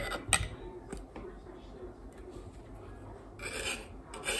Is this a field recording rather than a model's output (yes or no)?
yes